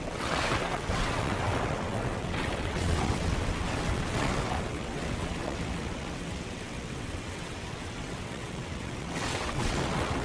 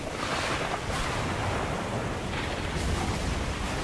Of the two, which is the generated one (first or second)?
first